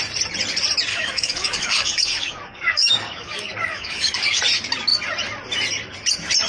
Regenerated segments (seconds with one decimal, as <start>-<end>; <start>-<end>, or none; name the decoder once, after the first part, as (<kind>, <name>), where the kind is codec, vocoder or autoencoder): 0.9-4.4 (codec, DAC)